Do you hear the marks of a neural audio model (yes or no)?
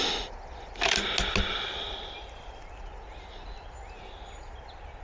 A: no